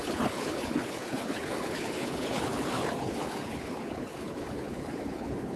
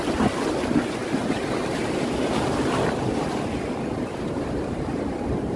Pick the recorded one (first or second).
second